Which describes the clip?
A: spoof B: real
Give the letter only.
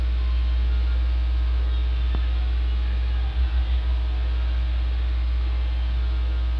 B